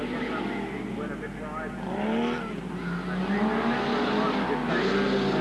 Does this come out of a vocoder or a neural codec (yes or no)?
no